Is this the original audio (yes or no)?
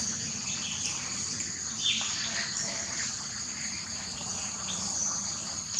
yes